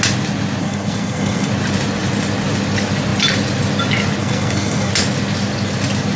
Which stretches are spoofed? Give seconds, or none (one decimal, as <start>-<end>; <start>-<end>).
0.6-1.5; 4.2-4.9